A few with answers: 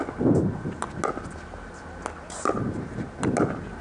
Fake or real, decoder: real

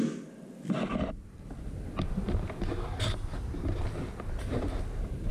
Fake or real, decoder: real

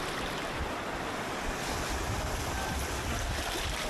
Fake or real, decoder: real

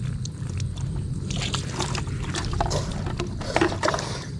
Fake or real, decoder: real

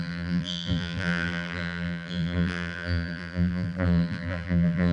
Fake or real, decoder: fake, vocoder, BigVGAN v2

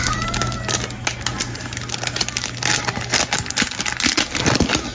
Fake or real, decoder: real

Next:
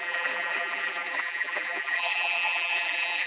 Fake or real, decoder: fake, vocoder, BigVGAN v2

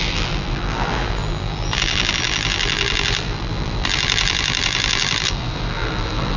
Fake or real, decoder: fake, vocoder, BigVGAN v2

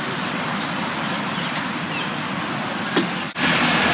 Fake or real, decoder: real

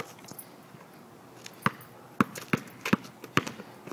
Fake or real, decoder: real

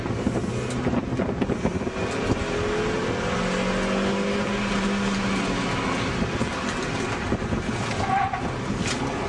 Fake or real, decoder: real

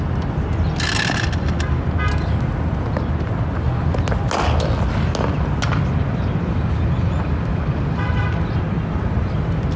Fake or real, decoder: real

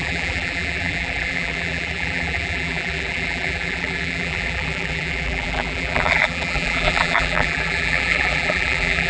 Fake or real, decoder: fake, vocoder, BigVGAN v2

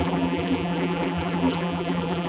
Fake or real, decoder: fake, vocoder, BigVGAN v2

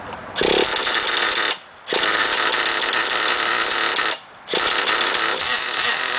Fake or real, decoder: real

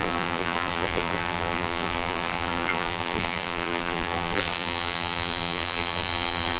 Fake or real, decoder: fake, vocoder, BigVGAN v2